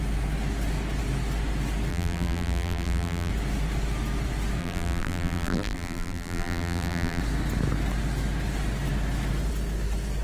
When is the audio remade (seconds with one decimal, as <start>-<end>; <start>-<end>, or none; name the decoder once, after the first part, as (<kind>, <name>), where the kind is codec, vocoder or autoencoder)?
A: 1.9-3.3 (vocoder, BigVGAN v2); 4.6-7.2